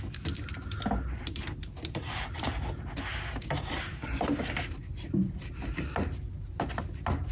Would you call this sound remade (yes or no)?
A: no